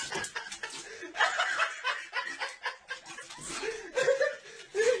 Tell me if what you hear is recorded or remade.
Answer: recorded